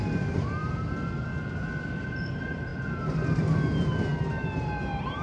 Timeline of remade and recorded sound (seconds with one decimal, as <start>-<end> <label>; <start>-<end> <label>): 0.0-5.2 recorded